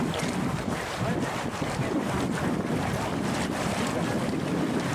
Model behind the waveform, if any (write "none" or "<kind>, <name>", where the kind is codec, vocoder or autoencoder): none